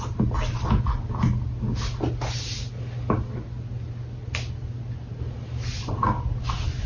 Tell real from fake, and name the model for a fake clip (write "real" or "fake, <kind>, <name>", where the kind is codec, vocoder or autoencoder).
real